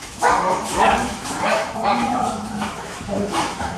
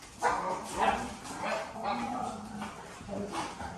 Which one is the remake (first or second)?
first